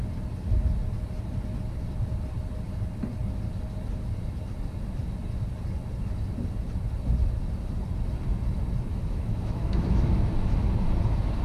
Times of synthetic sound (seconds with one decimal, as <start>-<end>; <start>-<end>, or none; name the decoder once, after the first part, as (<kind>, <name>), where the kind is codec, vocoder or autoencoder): 8.9-10.2 (autoencoder, DAC-VAE)